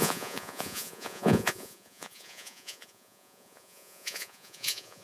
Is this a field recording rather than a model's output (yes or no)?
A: no